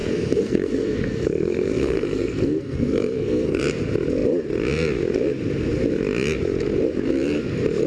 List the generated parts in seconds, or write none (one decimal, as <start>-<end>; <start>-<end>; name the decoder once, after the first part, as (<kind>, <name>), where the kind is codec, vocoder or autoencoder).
0.0-3.6 (codec, SNAC)